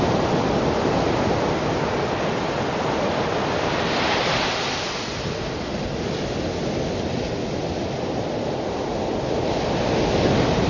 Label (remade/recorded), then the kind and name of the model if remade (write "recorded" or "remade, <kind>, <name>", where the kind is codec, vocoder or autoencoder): recorded